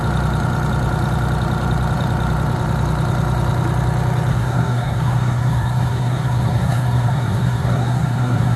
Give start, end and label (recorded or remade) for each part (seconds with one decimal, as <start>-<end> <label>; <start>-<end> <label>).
0.0-4.3 recorded; 4.3-8.6 remade